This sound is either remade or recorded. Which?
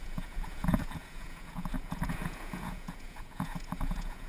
remade